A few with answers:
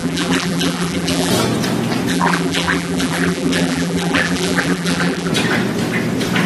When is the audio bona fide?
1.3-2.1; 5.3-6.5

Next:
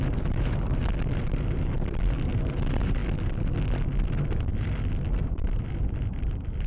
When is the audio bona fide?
0.8-1.3; 3.0-4.0; 4.5-5.2

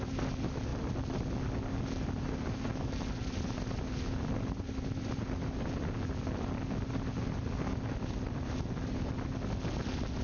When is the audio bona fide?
0.0-10.2

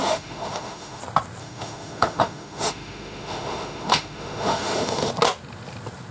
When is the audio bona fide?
1.0-1.4; 5.1-6.1

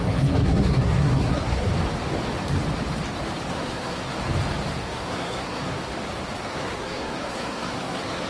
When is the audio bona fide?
1.7-3.5; 4.1-4.8; 5.9-6.5

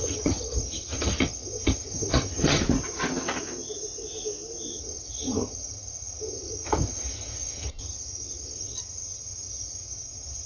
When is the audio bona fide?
2.6-4.8

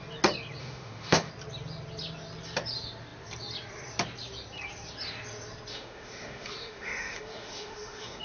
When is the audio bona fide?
0.0-0.6; 1.3-5.7

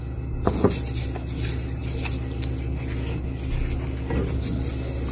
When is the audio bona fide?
0.0-5.1